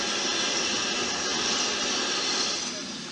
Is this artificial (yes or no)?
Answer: no